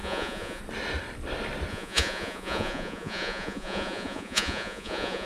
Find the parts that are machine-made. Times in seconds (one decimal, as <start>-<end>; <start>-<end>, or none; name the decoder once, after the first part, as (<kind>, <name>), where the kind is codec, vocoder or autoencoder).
0.0-0.6 (vocoder, Vocos); 1.7-5.3